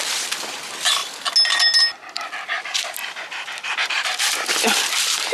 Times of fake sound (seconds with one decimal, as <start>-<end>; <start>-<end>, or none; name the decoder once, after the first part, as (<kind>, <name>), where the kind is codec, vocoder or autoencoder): 0.0-1.0 (vocoder, BigVGAN v2); 2.1-3.0; 3.8-5.3